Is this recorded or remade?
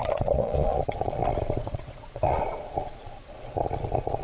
remade